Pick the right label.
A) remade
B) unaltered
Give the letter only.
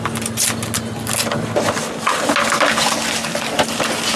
B